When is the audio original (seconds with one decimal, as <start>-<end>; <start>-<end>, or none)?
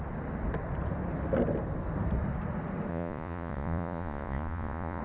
0.0-2.9